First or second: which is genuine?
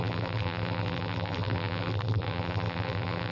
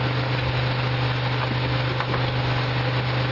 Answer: second